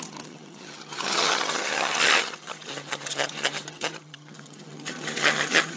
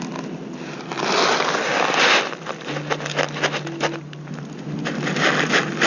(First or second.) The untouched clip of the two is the second